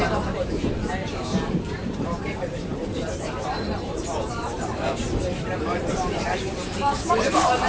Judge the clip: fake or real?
fake